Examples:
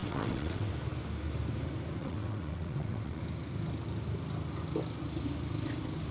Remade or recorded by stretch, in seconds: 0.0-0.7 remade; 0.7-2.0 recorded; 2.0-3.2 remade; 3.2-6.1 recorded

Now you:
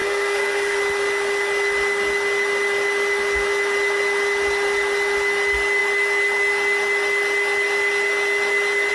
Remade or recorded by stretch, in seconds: 0.0-0.8 remade; 0.8-8.9 recorded

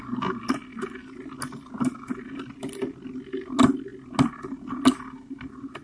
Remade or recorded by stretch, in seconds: 0.0-5.8 recorded